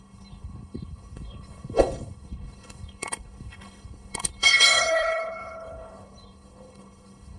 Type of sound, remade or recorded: remade